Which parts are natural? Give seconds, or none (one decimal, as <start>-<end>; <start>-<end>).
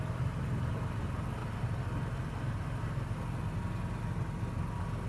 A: 0.0-5.1